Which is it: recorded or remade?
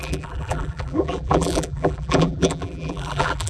remade